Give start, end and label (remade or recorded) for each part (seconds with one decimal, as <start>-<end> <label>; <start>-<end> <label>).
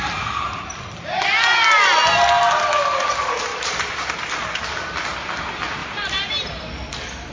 0.0-3.5 recorded; 3.5-4.6 remade; 4.6-5.8 recorded; 5.8-6.5 remade; 6.5-7.3 recorded